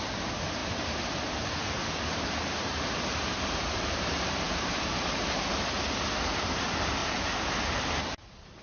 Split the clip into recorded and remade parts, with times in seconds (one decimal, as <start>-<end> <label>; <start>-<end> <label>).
0.0-0.6 recorded; 0.6-5.5 remade; 5.5-7.0 recorded; 7.0-8.6 remade